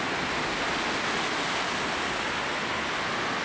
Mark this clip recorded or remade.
recorded